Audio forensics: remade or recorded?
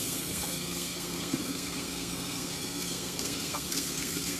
remade